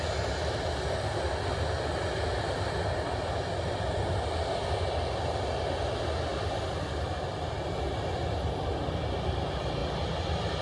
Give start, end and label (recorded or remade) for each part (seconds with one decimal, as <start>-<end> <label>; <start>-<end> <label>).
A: 0.0-10.6 recorded